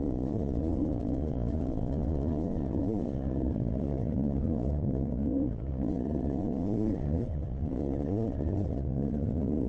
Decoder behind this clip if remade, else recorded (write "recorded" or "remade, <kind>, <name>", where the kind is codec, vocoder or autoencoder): remade, vocoder, Vocos